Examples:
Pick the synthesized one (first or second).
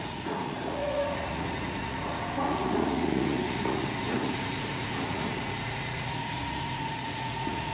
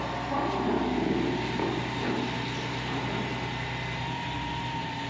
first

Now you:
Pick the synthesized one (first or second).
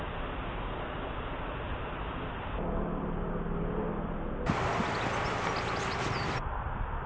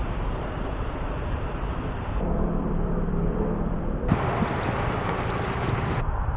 second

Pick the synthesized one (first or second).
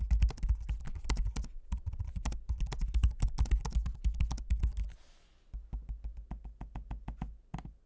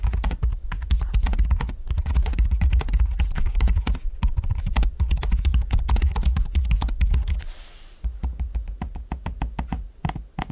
second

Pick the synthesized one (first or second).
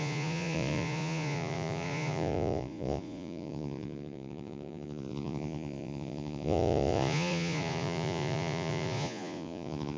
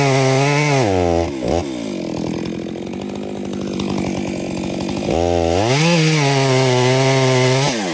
first